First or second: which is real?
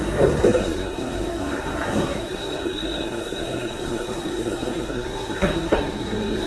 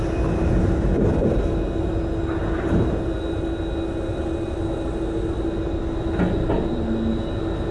second